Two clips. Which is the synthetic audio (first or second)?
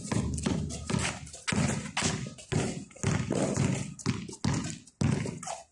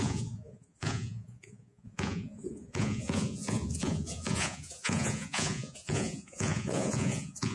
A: second